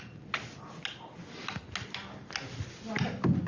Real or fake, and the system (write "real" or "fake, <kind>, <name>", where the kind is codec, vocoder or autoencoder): real